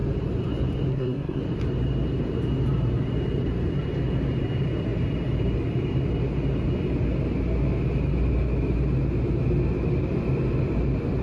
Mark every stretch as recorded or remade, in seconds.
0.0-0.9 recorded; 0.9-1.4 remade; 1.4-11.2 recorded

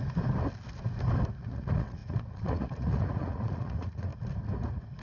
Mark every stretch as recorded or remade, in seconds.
0.0-1.4 recorded; 1.4-4.1 remade; 4.1-5.0 recorded

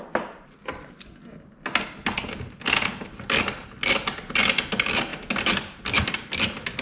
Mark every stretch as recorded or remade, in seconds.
0.0-6.8 recorded

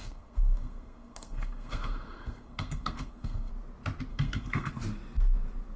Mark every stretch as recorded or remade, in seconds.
0.0-3.5 remade; 3.5-4.1 recorded; 4.1-4.7 remade; 4.7-5.8 recorded

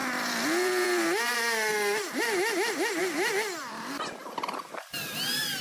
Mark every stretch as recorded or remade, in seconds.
0.0-2.2 remade; 2.2-3.0 recorded; 3.0-3.9 remade; 3.9-5.6 recorded